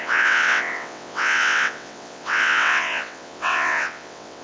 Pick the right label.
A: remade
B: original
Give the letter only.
A